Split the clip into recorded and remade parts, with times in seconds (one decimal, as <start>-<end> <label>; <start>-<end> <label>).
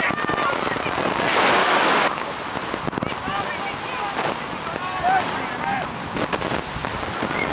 0.0-1.6 recorded; 1.6-2.3 remade; 2.3-7.5 recorded